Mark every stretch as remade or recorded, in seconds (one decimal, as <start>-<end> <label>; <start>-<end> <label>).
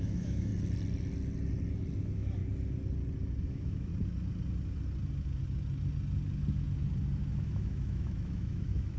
0.0-0.5 remade; 0.5-2.0 recorded; 2.0-2.4 remade; 2.4-3.4 recorded; 3.4-3.9 remade; 3.9-7.3 recorded; 7.3-9.0 remade